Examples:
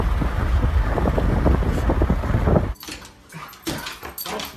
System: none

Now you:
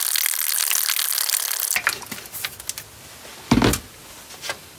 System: none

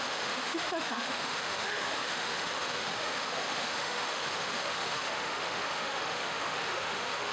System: autoencoder, DAC-VAE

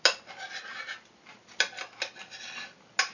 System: none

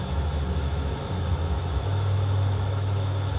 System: autoencoder, DAC-VAE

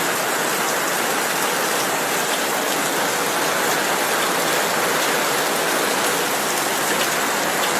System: none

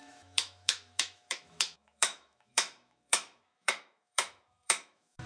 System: autoencoder, DAC-VAE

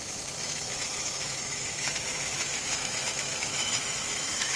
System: autoencoder, DAC-VAE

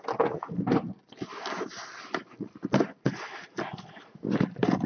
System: none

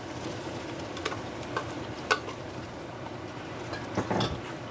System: none